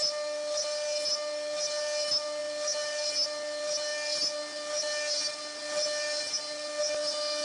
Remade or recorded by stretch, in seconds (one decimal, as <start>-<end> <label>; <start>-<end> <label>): 0.0-7.4 recorded